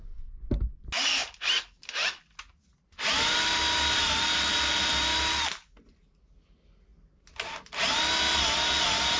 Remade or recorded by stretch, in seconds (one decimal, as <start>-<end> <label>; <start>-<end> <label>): 0.0-9.2 recorded

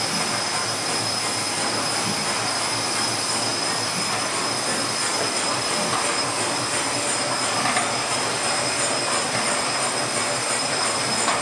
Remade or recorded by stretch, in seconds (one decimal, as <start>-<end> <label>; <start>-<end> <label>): 0.0-11.4 recorded